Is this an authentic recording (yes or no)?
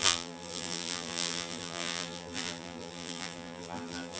no